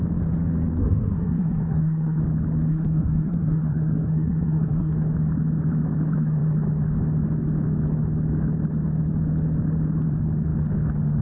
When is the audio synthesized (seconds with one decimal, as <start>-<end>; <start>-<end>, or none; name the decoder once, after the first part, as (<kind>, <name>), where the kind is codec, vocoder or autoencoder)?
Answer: 0.8-2.2 (codec, SNAC); 2.7-4.9